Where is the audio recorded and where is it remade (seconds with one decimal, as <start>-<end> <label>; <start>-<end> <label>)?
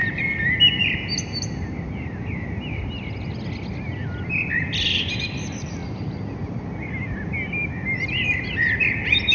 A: 0.0-9.3 recorded